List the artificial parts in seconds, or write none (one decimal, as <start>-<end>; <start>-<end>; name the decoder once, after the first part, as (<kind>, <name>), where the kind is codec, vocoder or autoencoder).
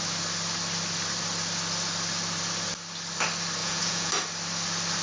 3.6-4.1 (vocoder, Vocos)